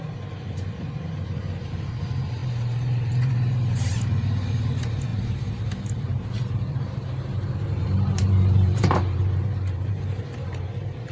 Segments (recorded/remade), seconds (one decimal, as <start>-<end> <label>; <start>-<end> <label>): 0.0-11.1 remade